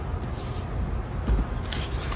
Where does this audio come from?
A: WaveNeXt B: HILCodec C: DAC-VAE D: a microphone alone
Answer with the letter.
D